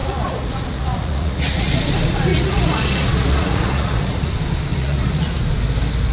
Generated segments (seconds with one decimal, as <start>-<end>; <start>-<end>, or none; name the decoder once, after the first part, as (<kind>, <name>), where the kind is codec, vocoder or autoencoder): 0.0-1.9 (vocoder, Vocos); 2.3-4.3; 4.7-5.4